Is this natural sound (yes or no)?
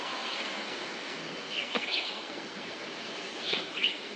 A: no